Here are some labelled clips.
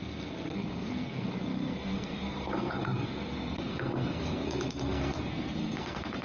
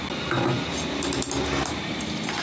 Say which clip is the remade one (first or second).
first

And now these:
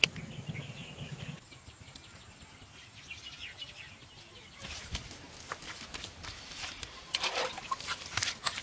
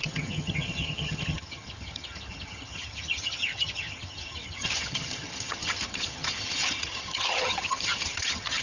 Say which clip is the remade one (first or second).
second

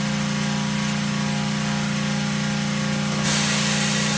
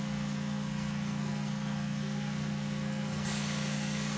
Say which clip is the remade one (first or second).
second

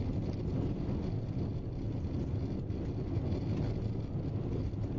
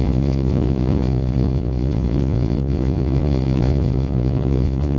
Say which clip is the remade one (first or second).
second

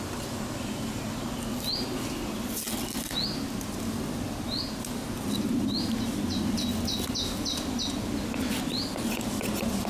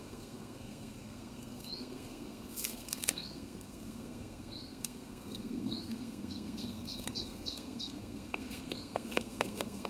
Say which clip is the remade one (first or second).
second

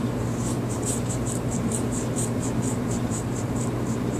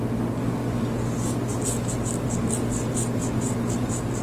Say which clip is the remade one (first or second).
first